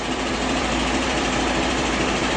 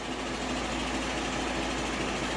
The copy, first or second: first